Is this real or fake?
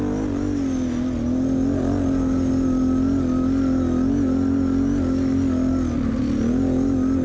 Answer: real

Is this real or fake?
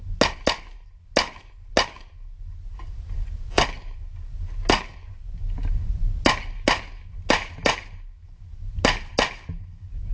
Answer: real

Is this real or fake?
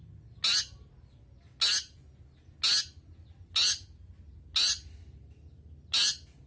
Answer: real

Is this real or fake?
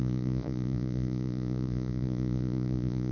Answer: fake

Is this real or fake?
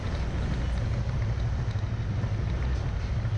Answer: real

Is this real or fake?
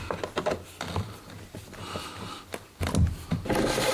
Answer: real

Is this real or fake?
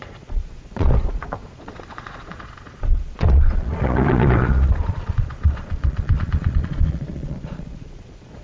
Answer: fake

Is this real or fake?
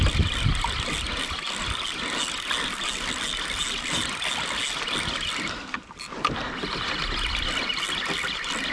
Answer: real